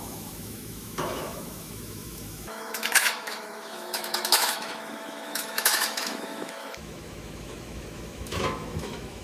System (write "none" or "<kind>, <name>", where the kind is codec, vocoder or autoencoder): autoencoder, DAC-VAE